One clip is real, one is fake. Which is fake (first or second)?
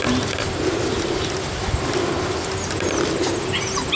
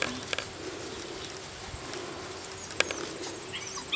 first